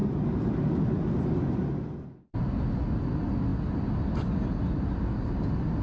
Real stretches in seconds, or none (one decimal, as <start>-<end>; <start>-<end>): 0.7-5.8